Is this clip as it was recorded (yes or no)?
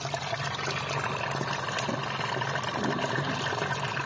yes